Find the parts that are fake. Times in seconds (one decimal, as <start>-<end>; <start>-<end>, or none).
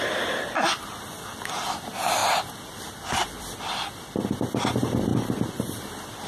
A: none